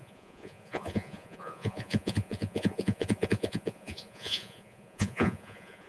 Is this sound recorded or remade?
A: remade